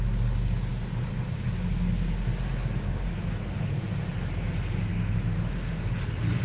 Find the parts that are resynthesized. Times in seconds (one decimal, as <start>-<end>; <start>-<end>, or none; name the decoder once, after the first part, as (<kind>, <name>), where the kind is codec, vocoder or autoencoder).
4.9-6.0 (autoencoder, DAC-VAE)